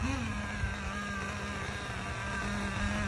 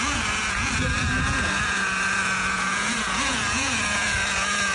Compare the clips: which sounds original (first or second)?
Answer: first